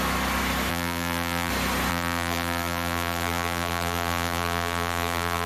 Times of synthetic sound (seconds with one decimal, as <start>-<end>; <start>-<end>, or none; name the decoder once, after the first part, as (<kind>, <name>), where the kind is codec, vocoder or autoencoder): 0.7-1.5 (vocoder, BigVGAN v2); 1.9-5.5